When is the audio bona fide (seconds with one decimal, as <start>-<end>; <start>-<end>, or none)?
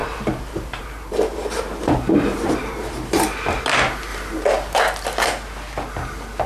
2.9-4.1; 4.8-6.5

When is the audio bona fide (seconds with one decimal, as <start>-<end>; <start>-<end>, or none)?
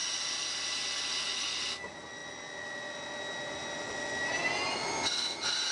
0.0-5.7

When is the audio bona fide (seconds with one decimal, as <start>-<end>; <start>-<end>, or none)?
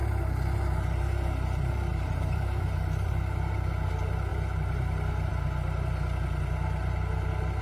0.0-1.9; 3.1-7.6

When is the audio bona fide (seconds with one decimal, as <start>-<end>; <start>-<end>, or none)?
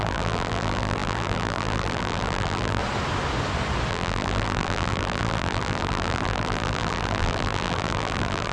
2.8-3.9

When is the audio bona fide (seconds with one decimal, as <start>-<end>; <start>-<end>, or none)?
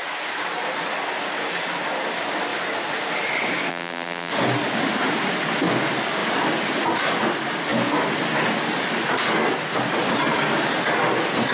0.0-3.7; 4.3-11.5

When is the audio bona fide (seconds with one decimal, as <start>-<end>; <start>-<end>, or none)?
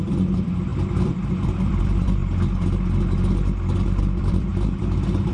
2.2-4.0; 4.5-5.3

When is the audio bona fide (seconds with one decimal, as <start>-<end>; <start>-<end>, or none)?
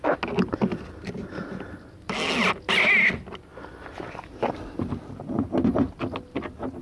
0.0-6.8